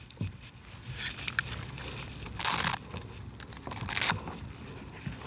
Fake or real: real